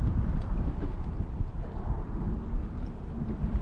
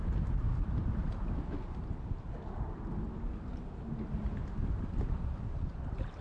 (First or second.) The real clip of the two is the second